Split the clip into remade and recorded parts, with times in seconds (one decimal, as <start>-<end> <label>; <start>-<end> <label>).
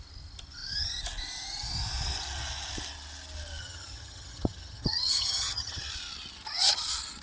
0.0-3.6 recorded; 3.6-5.9 remade; 5.9-7.2 recorded